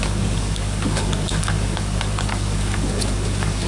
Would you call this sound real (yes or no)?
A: no